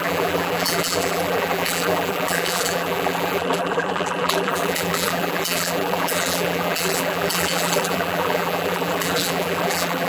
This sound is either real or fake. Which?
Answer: fake